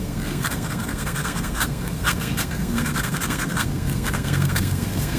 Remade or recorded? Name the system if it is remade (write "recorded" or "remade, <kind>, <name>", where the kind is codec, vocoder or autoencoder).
remade, codec, SNAC